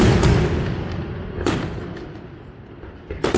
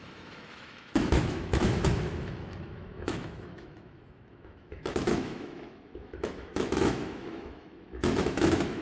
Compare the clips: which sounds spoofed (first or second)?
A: second